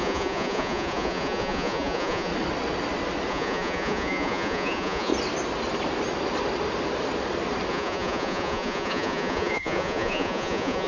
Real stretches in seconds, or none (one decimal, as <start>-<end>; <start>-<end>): 2.3-3.3; 5.1-7.7